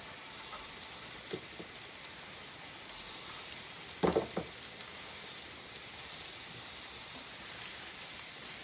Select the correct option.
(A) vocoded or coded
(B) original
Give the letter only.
B